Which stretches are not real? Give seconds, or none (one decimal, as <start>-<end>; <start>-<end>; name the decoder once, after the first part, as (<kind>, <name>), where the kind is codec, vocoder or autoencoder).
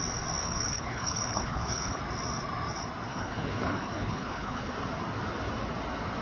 0.4-2.0 (codec, HILCodec); 3.1-4.7